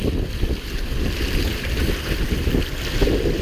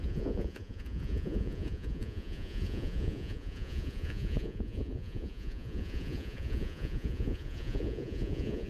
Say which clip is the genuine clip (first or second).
first